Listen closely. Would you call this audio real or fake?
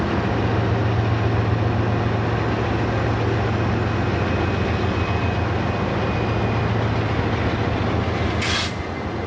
real